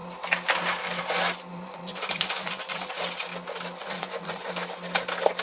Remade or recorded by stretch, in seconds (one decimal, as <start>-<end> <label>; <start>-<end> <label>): 0.0-1.5 recorded; 1.5-3.0 remade; 3.0-3.8 recorded; 3.8-4.5 remade; 4.5-5.4 recorded